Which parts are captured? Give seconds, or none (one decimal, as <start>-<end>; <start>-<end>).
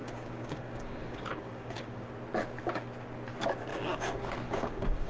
2.1-3.7